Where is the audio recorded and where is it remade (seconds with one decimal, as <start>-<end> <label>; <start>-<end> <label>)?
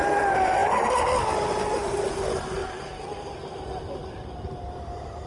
0.0-5.3 recorded